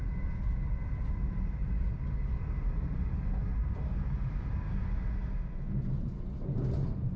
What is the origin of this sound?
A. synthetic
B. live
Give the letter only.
B